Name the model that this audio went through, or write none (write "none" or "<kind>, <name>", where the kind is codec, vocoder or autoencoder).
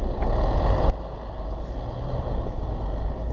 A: none